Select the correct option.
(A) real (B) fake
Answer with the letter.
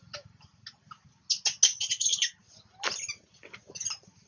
A